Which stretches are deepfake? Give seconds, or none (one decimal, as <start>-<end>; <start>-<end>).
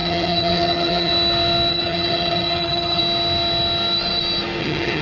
0.0-1.1; 1.7-3.0; 4.6-5.0